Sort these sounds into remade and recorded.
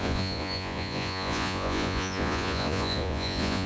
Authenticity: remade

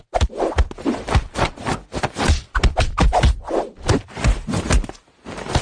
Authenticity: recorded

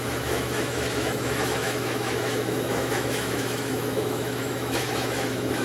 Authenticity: remade